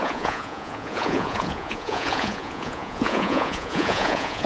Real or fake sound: fake